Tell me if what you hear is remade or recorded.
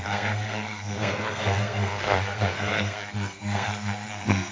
remade